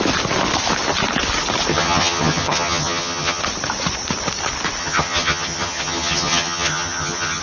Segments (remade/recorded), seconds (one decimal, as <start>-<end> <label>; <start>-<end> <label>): 0.0-1.7 recorded; 1.7-3.4 remade; 3.4-4.8 recorded; 4.8-7.4 remade